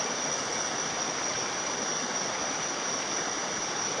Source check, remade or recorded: recorded